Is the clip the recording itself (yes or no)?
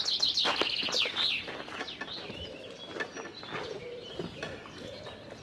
yes